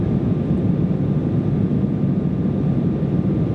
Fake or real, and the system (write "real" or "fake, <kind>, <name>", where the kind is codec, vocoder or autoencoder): real